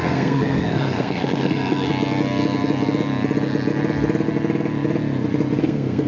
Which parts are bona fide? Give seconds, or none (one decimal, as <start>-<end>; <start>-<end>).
1.9-5.6